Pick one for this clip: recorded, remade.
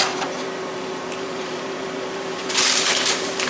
remade